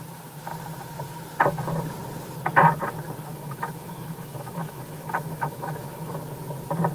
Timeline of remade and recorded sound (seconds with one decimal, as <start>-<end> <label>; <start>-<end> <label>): 0.0-3.3 recorded; 3.3-6.1 remade; 6.1-6.9 recorded